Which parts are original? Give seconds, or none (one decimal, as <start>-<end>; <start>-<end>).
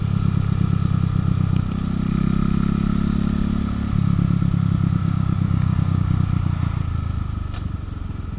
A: 0.0-5.0; 6.2-8.4